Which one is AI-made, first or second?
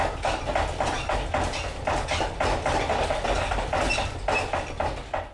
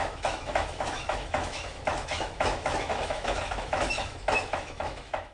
second